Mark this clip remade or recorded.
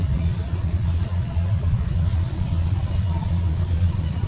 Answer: remade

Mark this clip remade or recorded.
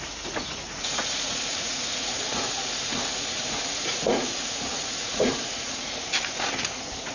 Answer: remade